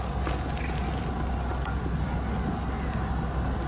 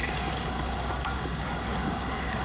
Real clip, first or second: first